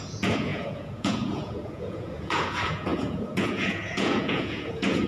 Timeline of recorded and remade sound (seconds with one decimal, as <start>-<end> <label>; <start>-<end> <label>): 0.0-5.1 remade